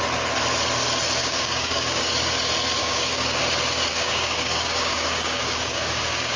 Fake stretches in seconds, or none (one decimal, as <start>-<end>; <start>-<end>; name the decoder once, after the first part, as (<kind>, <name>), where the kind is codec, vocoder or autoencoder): 1.2-2.1 (codec, DAC); 2.8-3.4; 3.9-6.4